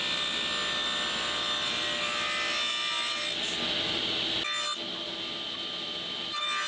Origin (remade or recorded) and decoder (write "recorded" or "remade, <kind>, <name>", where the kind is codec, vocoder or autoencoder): recorded